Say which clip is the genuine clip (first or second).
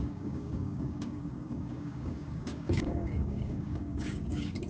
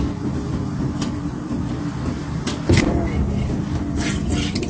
second